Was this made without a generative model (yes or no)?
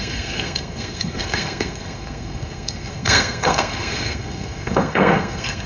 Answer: no